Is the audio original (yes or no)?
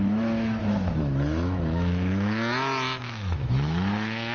no